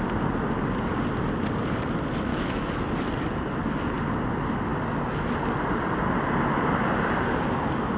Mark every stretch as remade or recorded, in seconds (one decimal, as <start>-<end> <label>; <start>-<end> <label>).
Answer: 0.0-2.3 recorded; 2.3-2.9 remade; 2.9-8.0 recorded